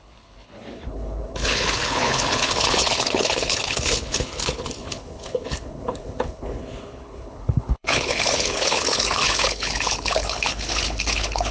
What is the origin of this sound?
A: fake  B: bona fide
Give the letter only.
A